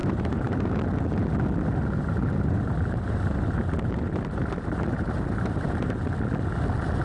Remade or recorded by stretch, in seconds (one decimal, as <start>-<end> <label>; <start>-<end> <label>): 0.0-0.7 remade; 0.7-1.8 recorded; 1.8-6.0 remade; 6.0-7.0 recorded